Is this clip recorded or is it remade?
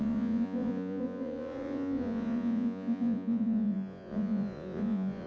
remade